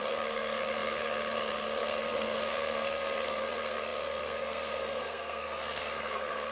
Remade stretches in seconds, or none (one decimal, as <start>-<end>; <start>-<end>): 0.0-6.5